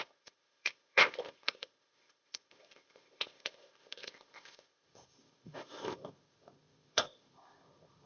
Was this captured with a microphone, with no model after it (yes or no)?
no